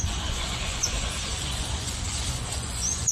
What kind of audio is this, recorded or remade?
remade